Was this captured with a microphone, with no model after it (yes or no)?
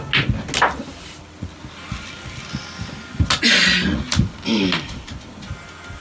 yes